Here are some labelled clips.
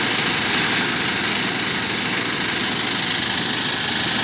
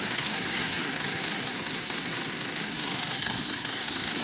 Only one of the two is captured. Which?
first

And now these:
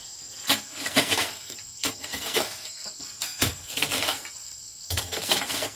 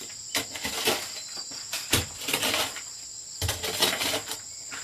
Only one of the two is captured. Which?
second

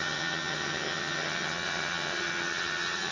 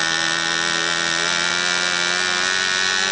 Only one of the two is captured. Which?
second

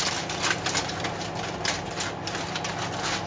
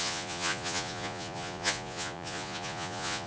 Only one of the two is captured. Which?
first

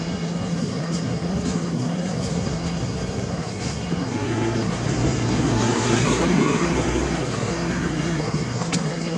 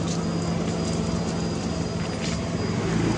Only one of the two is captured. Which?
second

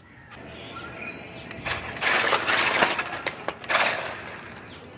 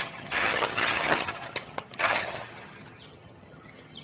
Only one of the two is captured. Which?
first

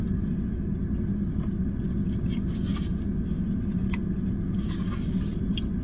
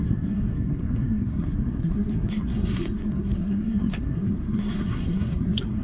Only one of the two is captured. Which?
first